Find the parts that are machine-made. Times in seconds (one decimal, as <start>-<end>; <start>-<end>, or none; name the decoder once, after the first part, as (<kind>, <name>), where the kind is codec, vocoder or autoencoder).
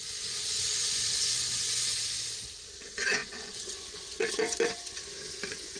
0.0-1.9 (vocoder, Vocos); 2.8-5.8